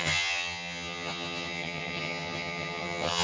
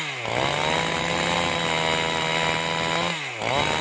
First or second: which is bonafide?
second